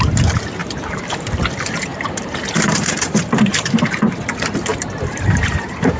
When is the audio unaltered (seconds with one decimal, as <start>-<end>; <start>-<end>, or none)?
0.0-0.6; 1.2-1.9; 4.2-4.7